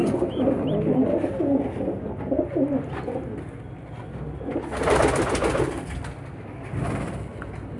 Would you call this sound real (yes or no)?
yes